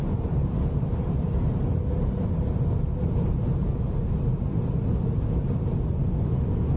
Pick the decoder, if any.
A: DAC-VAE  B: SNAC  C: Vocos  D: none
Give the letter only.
D